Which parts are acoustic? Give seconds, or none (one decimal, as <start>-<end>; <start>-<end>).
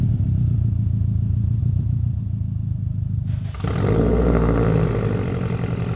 0.0-1.6; 2.2-6.0